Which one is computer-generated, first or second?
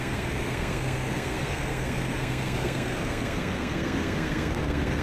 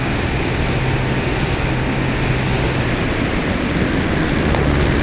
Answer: first